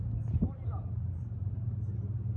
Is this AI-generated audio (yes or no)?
no